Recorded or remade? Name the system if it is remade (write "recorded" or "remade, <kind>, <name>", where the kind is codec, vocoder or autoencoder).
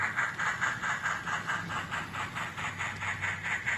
recorded